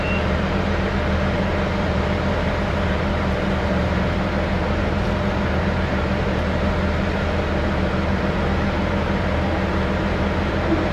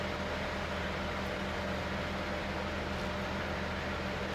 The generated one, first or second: first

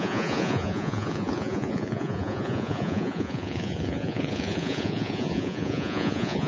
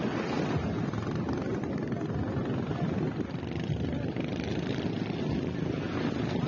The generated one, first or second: first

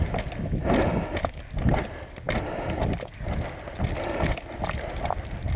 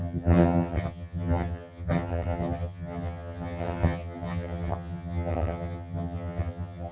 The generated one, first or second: second